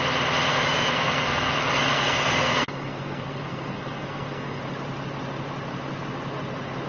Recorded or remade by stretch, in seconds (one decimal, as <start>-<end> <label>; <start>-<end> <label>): 0.0-0.5 recorded; 0.5-4.6 remade; 4.6-6.9 recorded